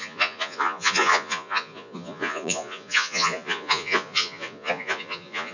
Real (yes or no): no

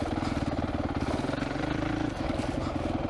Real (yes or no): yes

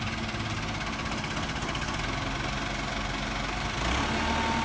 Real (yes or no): yes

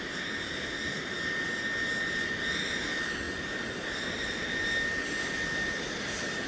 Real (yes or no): yes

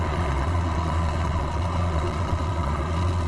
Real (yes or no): no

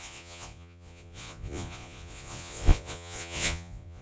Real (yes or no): no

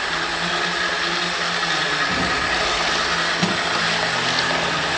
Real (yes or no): yes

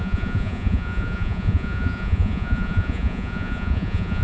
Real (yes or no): no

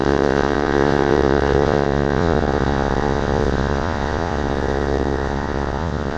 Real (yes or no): no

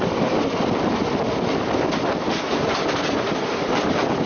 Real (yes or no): yes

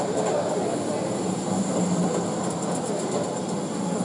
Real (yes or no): yes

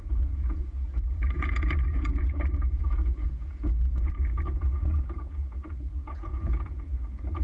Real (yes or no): no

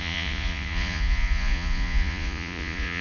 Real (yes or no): no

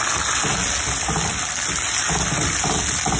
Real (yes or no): yes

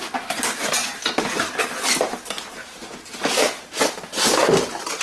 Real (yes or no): yes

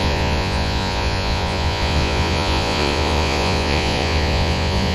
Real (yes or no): no